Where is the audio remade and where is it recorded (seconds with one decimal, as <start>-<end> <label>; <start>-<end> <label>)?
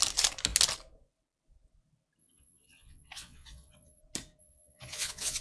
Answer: 0.0-2.2 recorded; 2.2-4.0 remade; 4.0-4.4 recorded; 4.4-5.4 remade